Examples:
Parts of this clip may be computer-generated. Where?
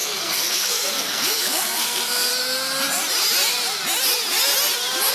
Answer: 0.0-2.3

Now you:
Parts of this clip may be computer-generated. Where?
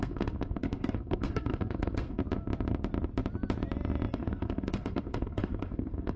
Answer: 0.0-2.2; 4.1-6.2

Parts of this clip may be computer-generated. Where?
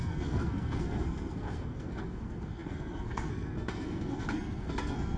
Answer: 0.0-5.2